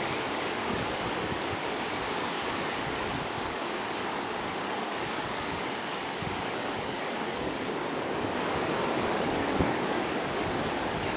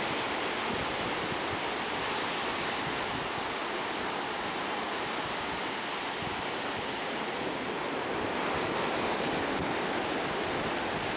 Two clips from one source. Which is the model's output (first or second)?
first